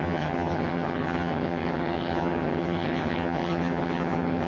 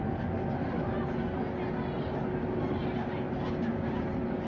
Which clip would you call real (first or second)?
second